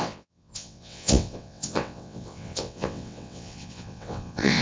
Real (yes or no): no